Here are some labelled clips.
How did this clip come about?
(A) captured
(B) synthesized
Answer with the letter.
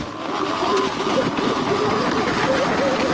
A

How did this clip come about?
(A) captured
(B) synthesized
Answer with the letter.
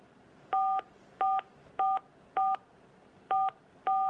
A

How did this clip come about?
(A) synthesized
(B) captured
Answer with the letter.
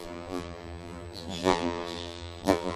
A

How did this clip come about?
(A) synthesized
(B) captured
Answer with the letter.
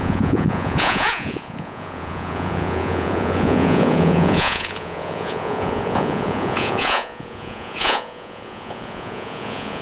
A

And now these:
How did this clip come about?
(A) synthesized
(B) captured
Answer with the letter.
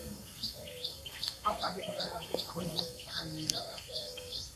A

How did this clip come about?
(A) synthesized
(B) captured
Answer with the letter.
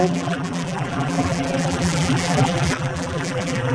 A